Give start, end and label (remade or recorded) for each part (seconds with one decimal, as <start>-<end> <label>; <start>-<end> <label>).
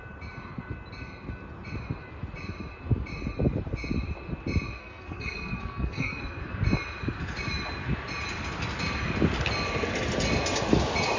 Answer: 0.0-4.8 recorded; 4.8-6.2 remade; 6.2-11.2 recorded